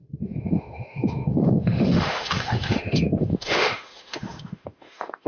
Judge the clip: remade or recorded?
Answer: remade